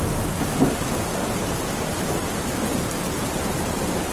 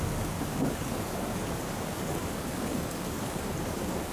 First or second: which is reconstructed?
second